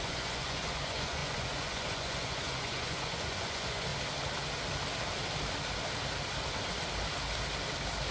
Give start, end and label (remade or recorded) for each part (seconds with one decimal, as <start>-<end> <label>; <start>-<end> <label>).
0.0-3.9 remade; 3.9-8.1 recorded